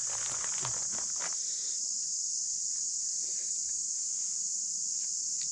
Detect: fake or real real